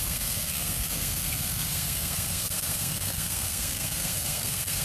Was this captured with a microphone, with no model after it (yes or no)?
no